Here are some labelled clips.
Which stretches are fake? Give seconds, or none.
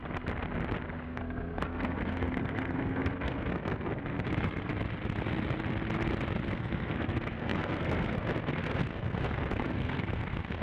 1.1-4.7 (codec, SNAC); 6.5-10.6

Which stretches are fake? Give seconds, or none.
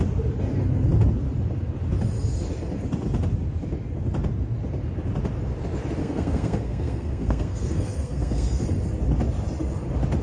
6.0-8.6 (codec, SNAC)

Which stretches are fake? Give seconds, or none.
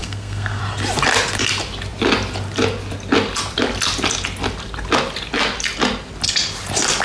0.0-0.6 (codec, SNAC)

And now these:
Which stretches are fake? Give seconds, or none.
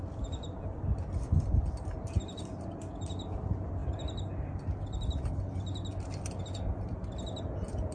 none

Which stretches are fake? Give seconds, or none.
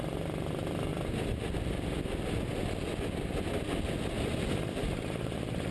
none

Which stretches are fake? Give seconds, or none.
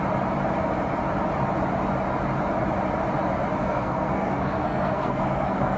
3.6-5.8 (codec, SNAC)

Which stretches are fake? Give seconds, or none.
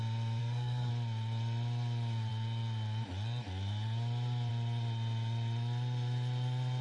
0.4-0.9 (codec, SNAC)